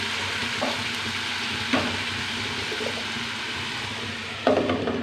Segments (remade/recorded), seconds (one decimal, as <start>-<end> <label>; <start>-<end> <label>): 0.0-5.0 recorded